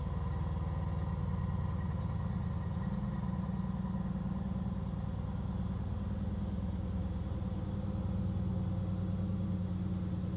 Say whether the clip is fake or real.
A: real